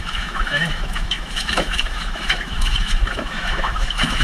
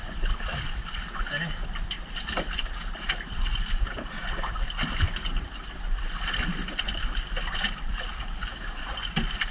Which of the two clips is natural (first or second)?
second